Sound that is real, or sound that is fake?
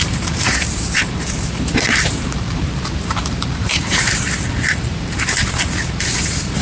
fake